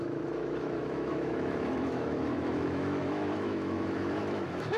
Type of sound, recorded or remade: remade